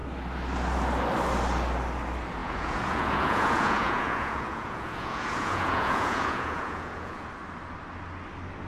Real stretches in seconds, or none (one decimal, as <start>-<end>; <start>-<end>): 0.0-2.4; 7.3-8.7